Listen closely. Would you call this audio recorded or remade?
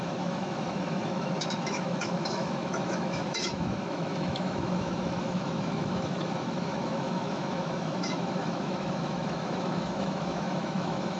remade